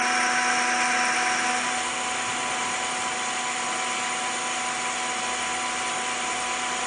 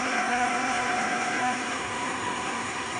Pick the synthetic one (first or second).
second